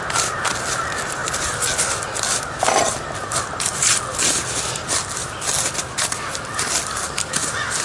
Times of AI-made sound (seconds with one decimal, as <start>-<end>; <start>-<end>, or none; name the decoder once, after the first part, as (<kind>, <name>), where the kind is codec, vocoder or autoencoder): none